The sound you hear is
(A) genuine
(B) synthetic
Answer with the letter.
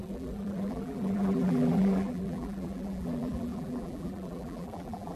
B